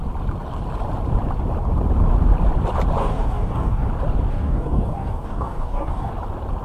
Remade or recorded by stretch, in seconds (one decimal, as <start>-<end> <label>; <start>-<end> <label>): 0.0-3.0 recorded; 3.0-3.9 remade; 3.9-4.3 recorded; 4.3-6.1 remade; 6.1-6.6 recorded